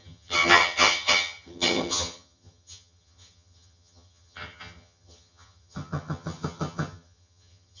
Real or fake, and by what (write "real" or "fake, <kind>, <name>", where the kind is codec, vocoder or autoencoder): fake, vocoder, HiFi-GAN